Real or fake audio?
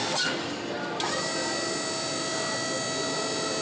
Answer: real